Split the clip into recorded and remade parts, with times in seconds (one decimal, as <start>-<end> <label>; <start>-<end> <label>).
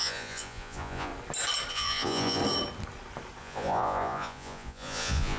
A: 0.0-1.1 remade; 1.1-1.7 recorded; 1.7-2.4 remade; 2.4-3.4 recorded; 3.4-5.4 remade